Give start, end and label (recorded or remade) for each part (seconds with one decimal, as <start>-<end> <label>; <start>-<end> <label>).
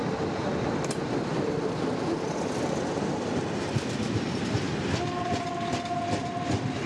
0.0-0.5 recorded; 0.5-4.6 remade; 4.6-6.9 recorded